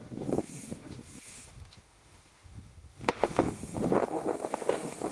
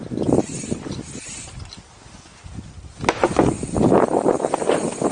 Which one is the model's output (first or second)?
first